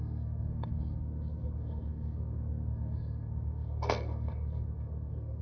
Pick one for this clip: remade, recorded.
remade